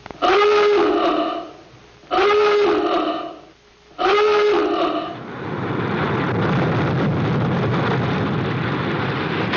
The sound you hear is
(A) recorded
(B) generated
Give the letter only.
A